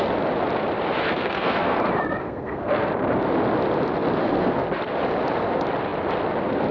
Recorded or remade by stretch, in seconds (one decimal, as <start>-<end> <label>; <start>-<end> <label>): 0.0-1.0 recorded; 1.0-1.8 remade; 1.8-2.2 recorded; 2.2-2.9 remade; 2.9-4.2 recorded; 4.2-4.7 remade; 4.7-6.7 recorded